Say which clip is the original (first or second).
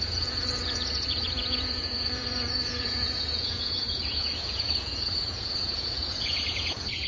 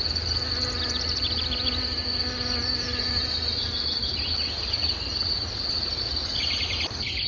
second